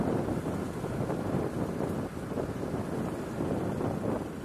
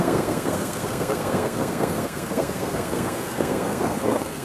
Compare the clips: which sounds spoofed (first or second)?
second